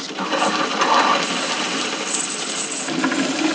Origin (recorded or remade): recorded